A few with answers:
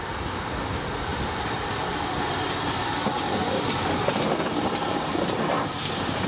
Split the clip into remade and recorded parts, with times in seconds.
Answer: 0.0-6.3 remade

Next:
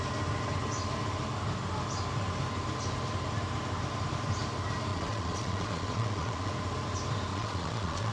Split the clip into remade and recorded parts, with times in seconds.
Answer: 0.0-4.9 recorded; 4.9-6.5 remade; 6.5-7.3 recorded; 7.3-8.1 remade

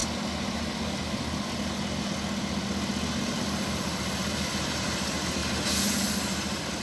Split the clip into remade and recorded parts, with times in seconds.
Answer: 0.0-6.8 recorded